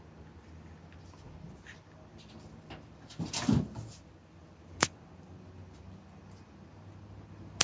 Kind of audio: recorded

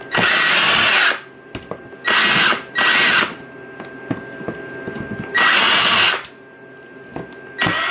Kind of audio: recorded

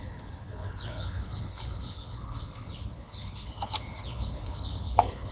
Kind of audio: remade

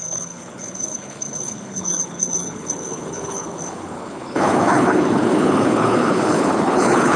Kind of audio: remade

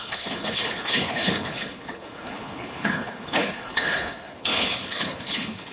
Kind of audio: remade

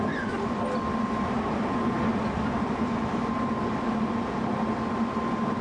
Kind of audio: recorded